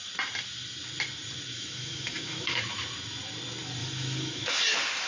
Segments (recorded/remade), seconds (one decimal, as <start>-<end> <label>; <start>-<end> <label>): 0.0-1.5 recorded; 1.5-2.6 remade; 2.6-3.8 recorded; 3.8-4.6 remade; 4.6-5.1 recorded